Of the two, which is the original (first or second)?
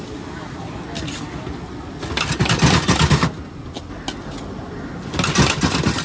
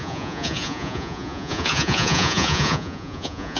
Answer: first